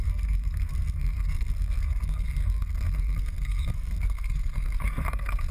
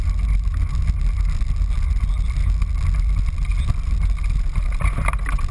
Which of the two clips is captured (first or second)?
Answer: second